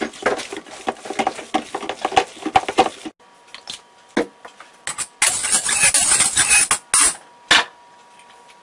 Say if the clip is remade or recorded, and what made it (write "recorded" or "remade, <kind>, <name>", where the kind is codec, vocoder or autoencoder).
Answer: recorded